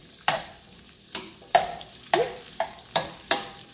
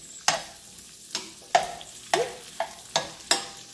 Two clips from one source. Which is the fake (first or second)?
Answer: first